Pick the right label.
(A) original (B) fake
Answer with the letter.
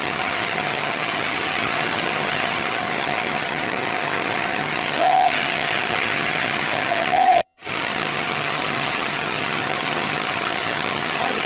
B